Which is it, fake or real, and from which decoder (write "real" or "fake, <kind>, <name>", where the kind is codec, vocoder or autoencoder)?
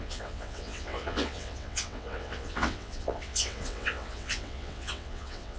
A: fake, vocoder, WaveNeXt